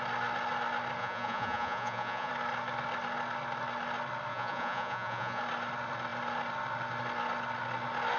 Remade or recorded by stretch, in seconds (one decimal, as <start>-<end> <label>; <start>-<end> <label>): 0.0-1.0 recorded; 1.0-2.3 remade; 2.3-4.3 recorded; 4.3-5.4 remade; 5.4-8.2 recorded